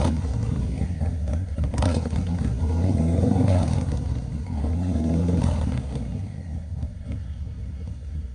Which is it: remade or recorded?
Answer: remade